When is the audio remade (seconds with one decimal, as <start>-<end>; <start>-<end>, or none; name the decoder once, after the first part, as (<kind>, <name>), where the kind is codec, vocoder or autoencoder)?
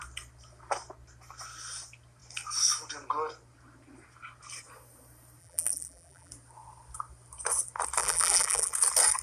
5.4-6.3 (vocoder, BigVGAN v2); 8.0-8.7